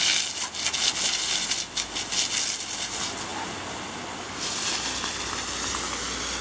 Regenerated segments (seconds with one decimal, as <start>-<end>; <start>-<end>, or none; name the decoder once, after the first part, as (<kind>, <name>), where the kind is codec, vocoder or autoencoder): none